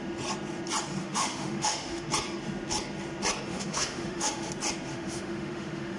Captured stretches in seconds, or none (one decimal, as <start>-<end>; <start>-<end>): 0.0-1.0; 2.1-3.5; 4.5-4.9